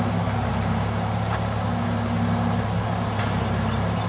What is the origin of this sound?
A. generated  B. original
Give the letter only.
B